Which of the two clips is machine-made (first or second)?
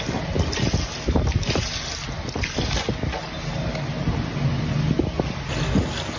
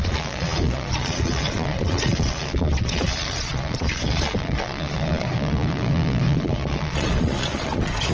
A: second